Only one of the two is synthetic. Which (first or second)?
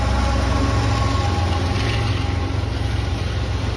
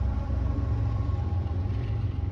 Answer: second